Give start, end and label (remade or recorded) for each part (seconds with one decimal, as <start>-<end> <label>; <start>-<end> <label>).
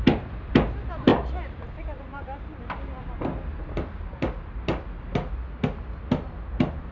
0.0-1.1 recorded; 1.1-2.6 remade; 2.6-6.9 recorded